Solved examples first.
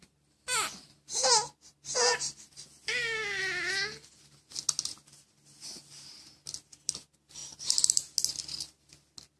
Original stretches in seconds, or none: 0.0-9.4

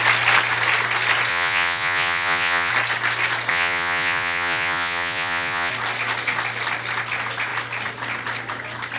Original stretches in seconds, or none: 0.0-1.3; 2.7-3.5; 5.7-9.0